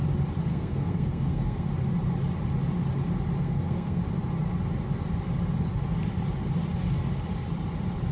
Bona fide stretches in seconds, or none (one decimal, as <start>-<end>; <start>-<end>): 0.0-0.5; 1.7-3.4; 4.0-8.1